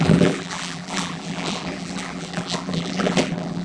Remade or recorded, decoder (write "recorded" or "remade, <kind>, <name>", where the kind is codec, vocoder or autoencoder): remade, vocoder, BigVGAN v2